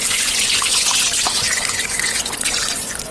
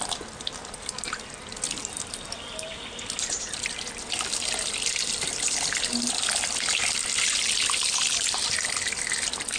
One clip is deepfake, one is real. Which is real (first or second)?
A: second